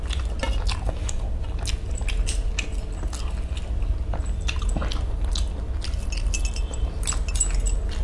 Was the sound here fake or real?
real